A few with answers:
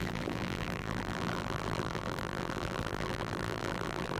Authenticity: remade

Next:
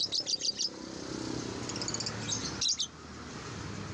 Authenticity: recorded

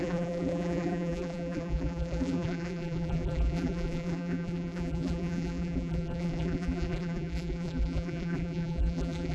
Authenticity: remade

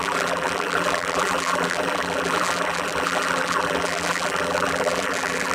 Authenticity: remade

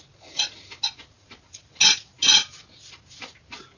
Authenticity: recorded